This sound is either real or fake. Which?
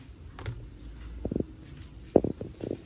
real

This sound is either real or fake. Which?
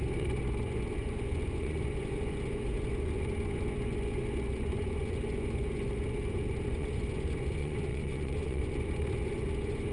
fake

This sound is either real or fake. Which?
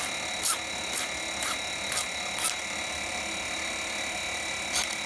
real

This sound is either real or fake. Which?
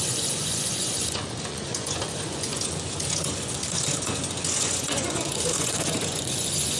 fake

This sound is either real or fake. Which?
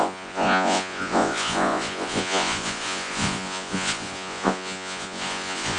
fake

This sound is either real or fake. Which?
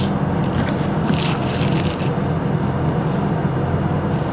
real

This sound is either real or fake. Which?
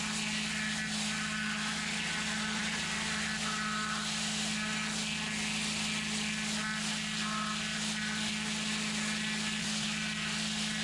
real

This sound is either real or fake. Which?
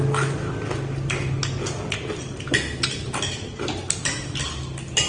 real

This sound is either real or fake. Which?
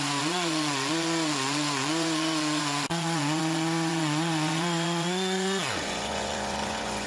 fake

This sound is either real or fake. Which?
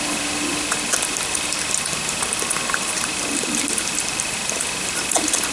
real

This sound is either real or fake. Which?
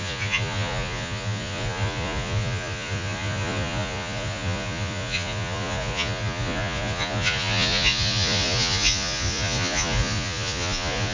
fake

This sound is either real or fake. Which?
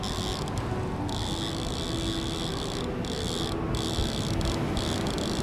real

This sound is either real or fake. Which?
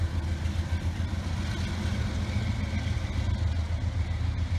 real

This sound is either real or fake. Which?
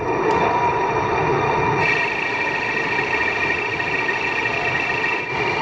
real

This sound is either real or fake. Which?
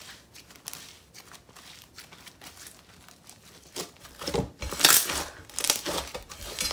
real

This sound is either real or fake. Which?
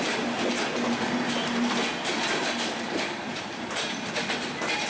real